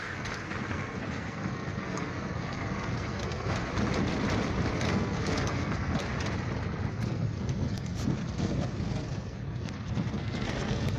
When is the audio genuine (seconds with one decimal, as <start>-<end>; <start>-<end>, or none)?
3.7-4.7; 6.1-6.9